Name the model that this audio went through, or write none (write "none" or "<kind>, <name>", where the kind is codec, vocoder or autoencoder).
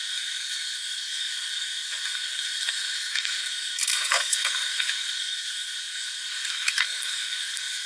codec, SNAC